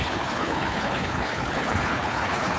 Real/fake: fake